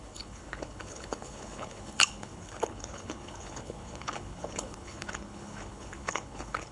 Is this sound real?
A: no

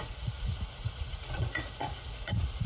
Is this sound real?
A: no